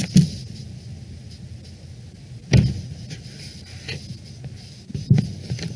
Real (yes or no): yes